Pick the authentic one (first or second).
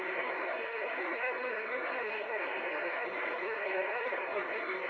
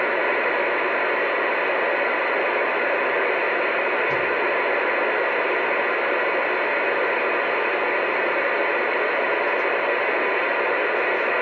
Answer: second